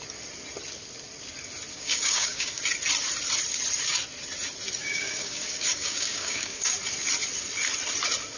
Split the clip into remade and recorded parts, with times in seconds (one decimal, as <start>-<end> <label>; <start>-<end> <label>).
0.0-1.7 recorded; 1.7-2.6 remade; 2.6-4.8 recorded; 4.8-6.7 remade; 6.7-8.4 recorded